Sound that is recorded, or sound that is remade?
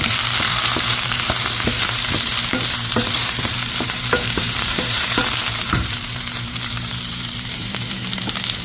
remade